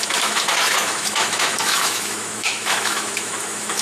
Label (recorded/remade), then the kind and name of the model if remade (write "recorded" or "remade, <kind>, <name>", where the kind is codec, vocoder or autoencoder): remade, autoencoder, DAC-VAE